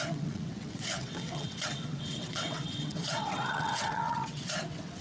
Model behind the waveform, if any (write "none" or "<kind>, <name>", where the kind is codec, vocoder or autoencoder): vocoder, WaveNeXt